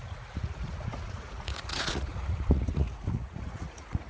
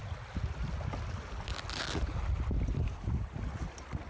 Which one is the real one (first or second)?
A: second